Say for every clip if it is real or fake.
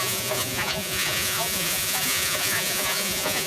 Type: fake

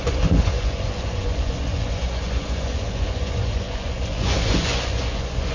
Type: fake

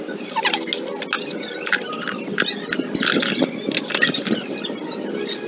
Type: real